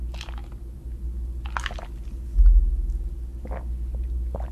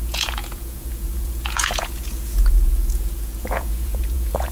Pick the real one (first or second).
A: first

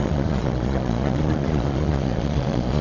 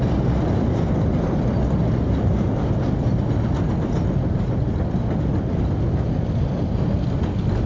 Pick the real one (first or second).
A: second